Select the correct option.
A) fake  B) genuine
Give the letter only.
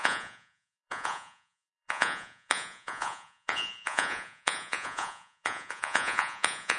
A